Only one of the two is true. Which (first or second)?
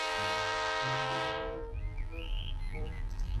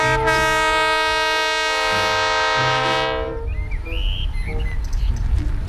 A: second